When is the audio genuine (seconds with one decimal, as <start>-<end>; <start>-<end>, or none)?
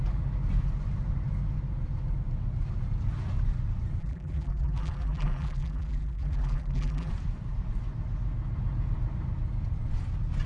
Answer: 0.0-4.0; 7.1-10.5